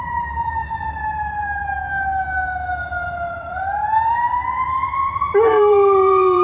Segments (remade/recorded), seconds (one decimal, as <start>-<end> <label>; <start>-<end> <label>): 0.0-1.6 remade; 1.6-3.3 recorded; 3.3-6.4 remade